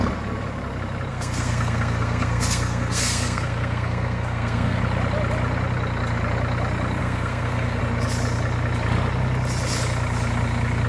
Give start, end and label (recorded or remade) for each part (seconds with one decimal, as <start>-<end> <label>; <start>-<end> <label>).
0.0-1.1 recorded; 1.1-4.8 remade; 4.8-7.0 recorded; 7.0-7.8 remade; 7.8-10.9 recorded

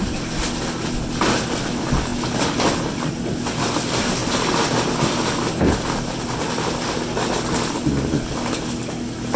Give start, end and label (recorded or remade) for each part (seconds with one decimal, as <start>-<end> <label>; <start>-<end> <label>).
0.0-9.4 recorded

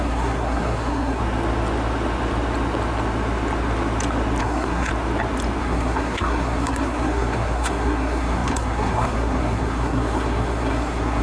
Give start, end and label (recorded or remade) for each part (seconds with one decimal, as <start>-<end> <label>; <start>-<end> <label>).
0.0-1.2 remade; 1.2-4.4 recorded; 4.4-4.9 remade; 4.9-5.6 recorded; 5.6-11.2 remade

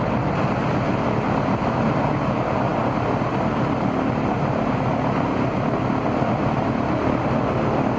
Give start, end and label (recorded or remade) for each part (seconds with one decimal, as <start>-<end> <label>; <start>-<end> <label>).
0.0-8.0 recorded